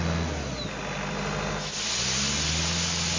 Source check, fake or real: real